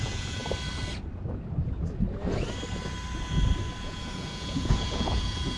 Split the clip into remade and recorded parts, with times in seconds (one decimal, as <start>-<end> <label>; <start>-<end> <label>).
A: 0.0-0.4 remade; 0.4-3.8 recorded; 3.8-5.6 remade